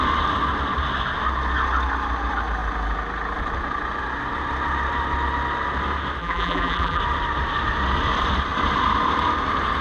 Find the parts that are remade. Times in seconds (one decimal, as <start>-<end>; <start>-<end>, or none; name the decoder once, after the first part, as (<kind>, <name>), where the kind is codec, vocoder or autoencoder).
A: 6.2-7.0 (vocoder, BigVGAN v2)